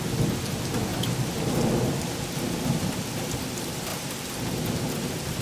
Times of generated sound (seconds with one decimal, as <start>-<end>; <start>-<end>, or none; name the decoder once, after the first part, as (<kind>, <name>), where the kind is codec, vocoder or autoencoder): none